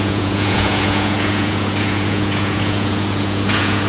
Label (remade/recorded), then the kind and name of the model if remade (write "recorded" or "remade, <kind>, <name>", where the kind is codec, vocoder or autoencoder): remade, vocoder, Vocos